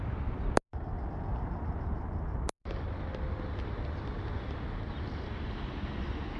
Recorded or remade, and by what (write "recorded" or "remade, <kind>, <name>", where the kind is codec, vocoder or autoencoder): recorded